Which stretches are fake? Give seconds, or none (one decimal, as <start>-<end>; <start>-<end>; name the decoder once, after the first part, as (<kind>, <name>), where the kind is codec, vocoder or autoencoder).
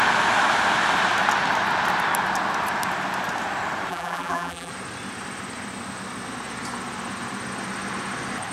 3.9-4.7 (vocoder, BigVGAN v2)